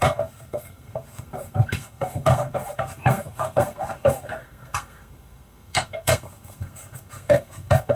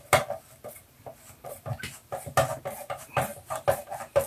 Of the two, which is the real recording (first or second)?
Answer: second